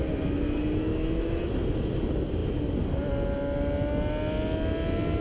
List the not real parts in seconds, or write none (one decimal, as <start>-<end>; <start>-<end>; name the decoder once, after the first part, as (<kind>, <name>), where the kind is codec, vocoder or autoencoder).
0.9-1.4 (autoencoder, DAC-VAE)